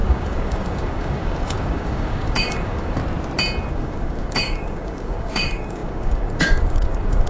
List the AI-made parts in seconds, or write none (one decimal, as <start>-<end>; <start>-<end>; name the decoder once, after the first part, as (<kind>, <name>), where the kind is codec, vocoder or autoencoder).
0.0-3.0 (codec, DAC); 3.7-7.3